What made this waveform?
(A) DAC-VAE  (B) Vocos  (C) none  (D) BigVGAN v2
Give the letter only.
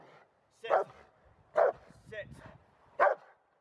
C